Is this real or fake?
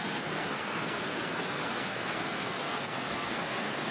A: fake